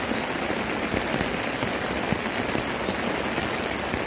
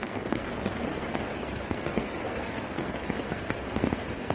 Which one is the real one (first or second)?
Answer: first